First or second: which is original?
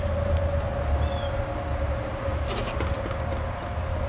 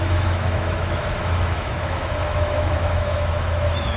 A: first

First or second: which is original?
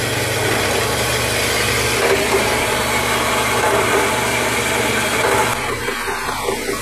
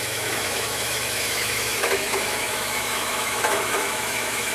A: first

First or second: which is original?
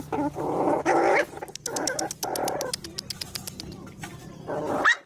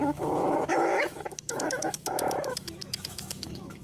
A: first